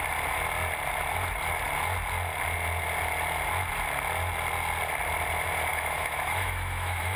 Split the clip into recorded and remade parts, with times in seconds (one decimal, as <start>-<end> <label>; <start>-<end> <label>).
0.0-5.7 recorded; 5.7-7.2 remade